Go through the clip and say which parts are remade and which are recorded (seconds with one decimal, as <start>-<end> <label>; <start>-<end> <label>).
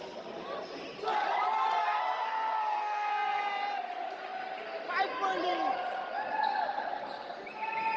0.0-1.8 recorded; 1.8-3.4 remade; 3.4-8.0 recorded